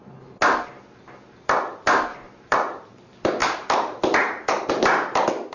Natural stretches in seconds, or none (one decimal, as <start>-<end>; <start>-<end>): 0.0-2.1; 2.9-3.4; 4.7-5.5